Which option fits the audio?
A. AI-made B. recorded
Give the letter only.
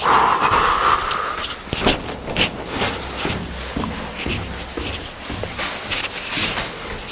B